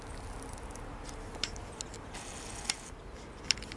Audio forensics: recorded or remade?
recorded